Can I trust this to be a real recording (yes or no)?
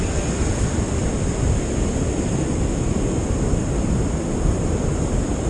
yes